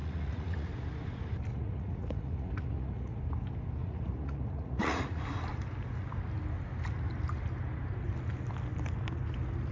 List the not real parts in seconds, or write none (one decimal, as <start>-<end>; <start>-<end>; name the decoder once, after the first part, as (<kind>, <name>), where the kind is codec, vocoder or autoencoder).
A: 0.0-0.7 (vocoder, Vocos); 1.5-3.2; 3.8-5.2